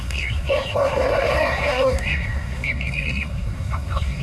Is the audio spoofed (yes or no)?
yes